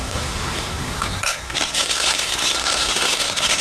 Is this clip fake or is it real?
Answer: fake